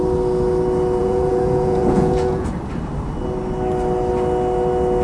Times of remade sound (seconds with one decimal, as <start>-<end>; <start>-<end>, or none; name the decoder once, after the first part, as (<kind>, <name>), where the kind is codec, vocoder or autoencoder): 1.0-2.5 (vocoder, Vocos)

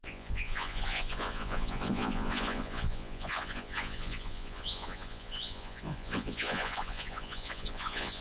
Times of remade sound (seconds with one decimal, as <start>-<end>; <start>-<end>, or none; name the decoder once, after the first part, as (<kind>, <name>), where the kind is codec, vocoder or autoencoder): 0.0-8.2 (vocoder, Vocos)

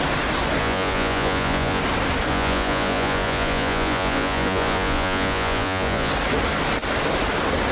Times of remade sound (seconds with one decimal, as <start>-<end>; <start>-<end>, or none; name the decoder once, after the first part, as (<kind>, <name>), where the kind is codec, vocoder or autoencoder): 0.6-1.8 (vocoder, Vocos); 2.3-6.1

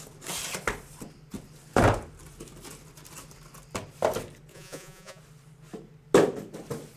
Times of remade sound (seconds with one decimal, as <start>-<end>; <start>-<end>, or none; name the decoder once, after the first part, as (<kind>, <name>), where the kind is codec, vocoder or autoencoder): 4.5-5.2 (vocoder, Vocos)

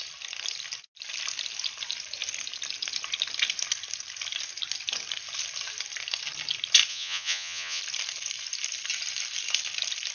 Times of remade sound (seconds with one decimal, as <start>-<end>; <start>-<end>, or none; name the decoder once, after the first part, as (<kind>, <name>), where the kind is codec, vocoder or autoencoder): 6.9-7.8 (vocoder, Vocos)

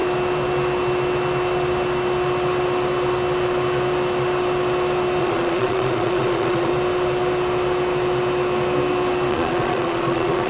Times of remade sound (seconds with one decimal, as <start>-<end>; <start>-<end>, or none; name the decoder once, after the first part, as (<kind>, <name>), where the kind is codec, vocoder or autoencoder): 5.2-6.7 (vocoder, Vocos); 9.3-10.5